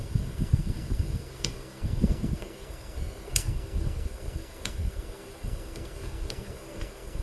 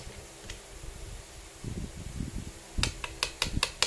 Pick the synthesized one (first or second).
first